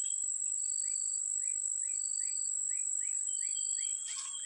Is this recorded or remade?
recorded